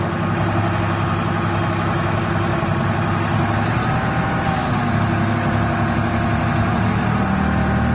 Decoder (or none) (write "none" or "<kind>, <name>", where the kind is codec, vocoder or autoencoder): none